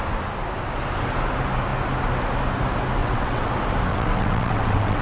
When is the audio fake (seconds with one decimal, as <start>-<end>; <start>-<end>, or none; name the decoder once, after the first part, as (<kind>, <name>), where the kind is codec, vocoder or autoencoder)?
3.0-3.5 (vocoder, WaveNeXt); 3.9-5.0